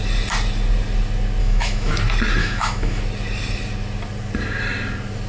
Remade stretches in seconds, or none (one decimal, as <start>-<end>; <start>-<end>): 1.4-1.9; 2.4-3.0